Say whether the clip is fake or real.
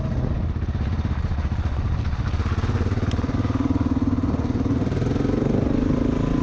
real